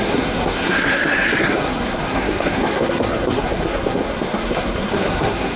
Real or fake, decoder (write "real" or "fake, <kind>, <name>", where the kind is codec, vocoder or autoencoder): fake, codec, SNAC